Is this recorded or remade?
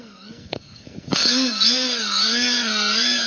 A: remade